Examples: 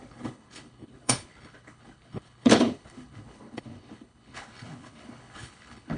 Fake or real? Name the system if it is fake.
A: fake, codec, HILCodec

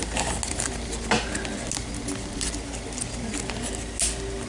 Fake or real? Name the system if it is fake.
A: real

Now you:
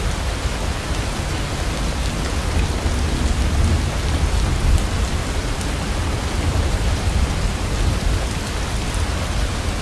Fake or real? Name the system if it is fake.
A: real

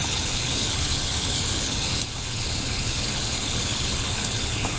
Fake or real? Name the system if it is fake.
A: fake, codec, HILCodec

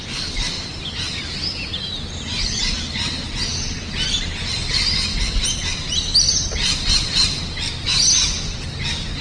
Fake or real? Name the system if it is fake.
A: real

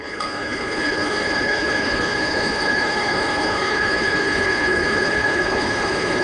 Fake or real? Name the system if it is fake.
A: fake, codec, HILCodec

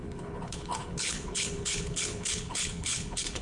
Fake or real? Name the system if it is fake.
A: fake, codec, HILCodec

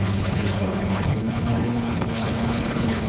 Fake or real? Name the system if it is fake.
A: fake, codec, HILCodec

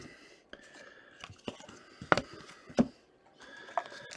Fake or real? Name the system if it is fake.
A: real